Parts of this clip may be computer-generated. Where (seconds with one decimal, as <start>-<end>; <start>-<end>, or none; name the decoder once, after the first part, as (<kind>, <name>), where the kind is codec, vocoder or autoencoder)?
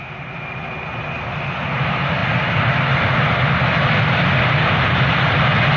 none